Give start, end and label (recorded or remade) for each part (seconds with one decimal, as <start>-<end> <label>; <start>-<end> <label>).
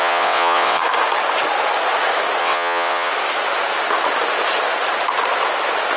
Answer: 0.0-0.8 remade; 0.8-2.4 recorded; 2.4-3.1 remade; 3.1-6.0 recorded